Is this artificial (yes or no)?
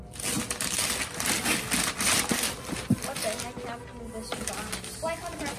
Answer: no